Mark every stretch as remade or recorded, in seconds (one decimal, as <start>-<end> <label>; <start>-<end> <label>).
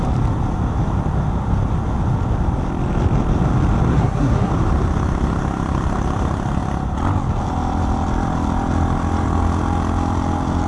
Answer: 0.0-3.9 recorded; 3.9-4.5 remade; 4.5-10.7 recorded